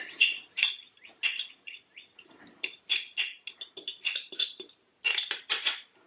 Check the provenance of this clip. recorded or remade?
recorded